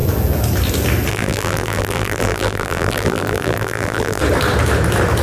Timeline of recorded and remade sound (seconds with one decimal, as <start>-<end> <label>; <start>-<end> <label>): 0.0-1.1 recorded; 1.1-4.2 remade; 4.2-5.2 recorded